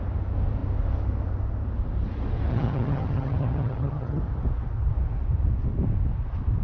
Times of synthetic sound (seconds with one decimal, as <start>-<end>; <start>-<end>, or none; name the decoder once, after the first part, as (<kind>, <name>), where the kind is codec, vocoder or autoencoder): 2.5-4.2 (vocoder, HiFi-GAN)